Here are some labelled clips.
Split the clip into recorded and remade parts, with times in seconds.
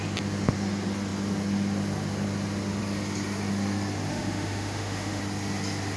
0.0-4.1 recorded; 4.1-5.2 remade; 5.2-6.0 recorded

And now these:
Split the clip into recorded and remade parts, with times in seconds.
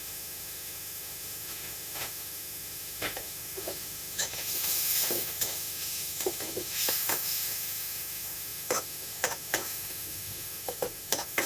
0.0-11.5 remade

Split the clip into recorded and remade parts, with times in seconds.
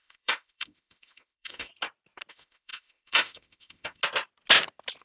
0.0-1.7 remade; 1.7-2.3 recorded; 2.3-4.0 remade; 4.0-5.0 recorded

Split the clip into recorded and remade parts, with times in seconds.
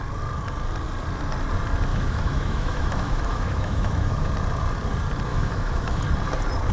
0.0-1.9 recorded; 1.9-4.3 remade; 4.3-5.3 recorded; 5.3-6.0 remade; 6.0-6.7 recorded